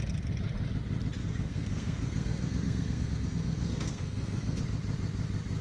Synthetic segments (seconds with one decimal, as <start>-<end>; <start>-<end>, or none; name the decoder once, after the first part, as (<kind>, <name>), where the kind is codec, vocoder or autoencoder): 1.2-4.6 (codec, SNAC)